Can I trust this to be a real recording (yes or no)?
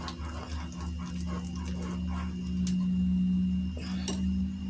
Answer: yes